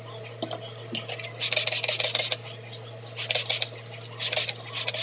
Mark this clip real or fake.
real